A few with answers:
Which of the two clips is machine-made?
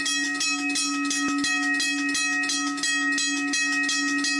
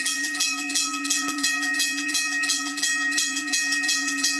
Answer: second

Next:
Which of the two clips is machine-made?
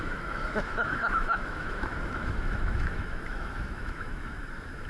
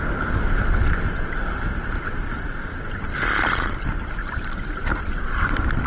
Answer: first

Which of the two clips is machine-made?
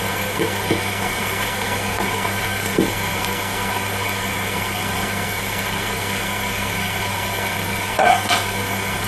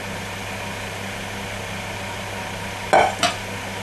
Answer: first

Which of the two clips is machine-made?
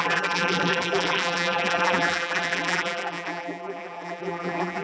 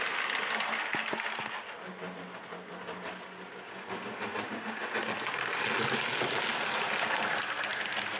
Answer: first